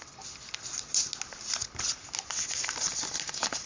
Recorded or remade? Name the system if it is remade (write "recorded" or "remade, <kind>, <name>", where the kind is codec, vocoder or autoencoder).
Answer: recorded